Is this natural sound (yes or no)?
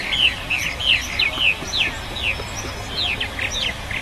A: yes